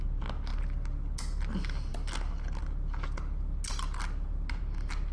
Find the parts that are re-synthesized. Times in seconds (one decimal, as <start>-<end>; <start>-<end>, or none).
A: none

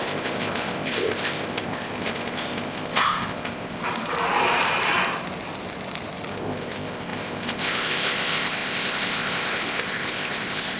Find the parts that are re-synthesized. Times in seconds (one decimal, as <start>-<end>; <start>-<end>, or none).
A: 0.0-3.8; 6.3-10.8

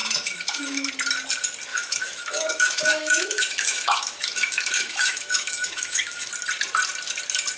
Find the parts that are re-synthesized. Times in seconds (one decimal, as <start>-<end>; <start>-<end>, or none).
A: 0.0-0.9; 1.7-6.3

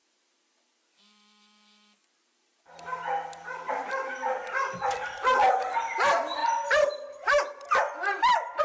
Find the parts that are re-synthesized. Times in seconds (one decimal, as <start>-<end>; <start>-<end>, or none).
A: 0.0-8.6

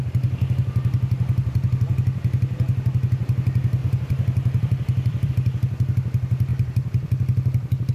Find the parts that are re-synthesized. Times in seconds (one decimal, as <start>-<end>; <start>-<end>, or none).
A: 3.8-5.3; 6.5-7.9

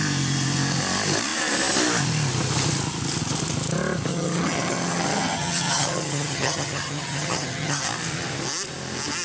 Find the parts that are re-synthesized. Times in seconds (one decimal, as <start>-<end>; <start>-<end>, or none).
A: 4.1-7.8

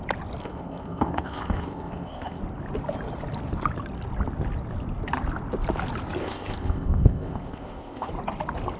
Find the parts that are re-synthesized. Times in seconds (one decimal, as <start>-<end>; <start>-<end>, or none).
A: 0.4-2.4; 6.2-8.1